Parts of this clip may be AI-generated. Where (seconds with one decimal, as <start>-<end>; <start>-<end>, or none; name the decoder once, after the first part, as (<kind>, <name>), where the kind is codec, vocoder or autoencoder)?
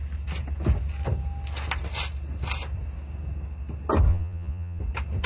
4.1-4.8 (vocoder, Vocos)